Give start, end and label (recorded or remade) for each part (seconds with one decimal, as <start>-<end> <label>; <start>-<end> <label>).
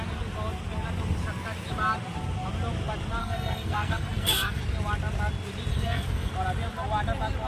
0.0-3.2 recorded; 3.2-4.6 remade; 4.6-5.7 recorded; 5.7-6.3 remade; 6.3-7.5 recorded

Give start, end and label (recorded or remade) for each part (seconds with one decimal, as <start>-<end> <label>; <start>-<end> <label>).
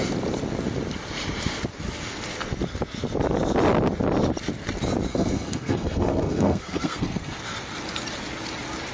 0.0-5.1 recorded; 5.1-7.4 remade; 7.4-8.9 recorded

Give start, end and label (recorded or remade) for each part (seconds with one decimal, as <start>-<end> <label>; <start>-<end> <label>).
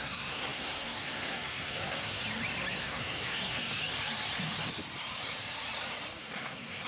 0.0-2.2 remade; 2.2-2.7 recorded; 2.7-3.8 remade; 3.8-6.2 recorded; 6.2-6.9 remade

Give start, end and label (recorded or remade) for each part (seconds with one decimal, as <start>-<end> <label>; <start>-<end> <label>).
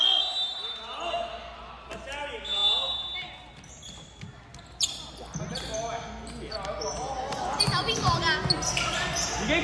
0.0-9.6 recorded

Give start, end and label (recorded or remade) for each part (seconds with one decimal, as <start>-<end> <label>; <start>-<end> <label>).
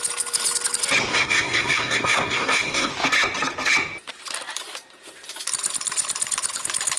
0.0-1.1 recorded; 1.1-2.9 remade; 2.9-7.0 recorded